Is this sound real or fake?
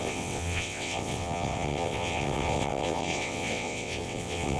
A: fake